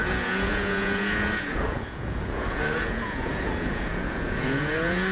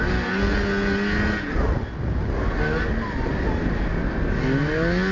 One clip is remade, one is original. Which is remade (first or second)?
first